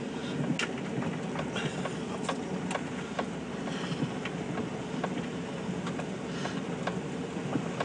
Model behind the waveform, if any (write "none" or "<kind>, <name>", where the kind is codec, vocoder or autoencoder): none